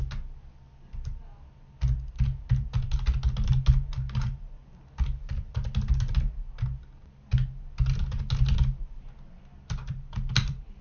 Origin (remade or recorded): recorded